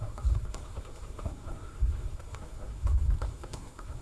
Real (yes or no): no